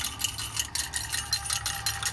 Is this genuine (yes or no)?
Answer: yes